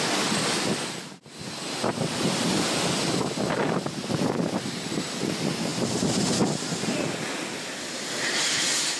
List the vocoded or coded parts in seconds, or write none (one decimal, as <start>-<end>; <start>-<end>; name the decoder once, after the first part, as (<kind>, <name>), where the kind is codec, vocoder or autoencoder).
none